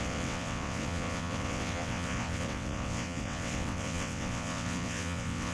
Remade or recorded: remade